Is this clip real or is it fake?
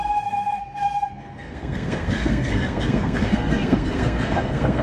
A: fake